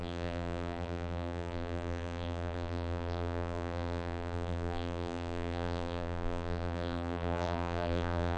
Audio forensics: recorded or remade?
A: remade